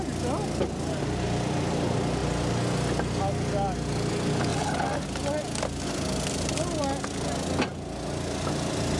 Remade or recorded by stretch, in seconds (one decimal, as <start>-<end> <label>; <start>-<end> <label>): 0.0-9.0 recorded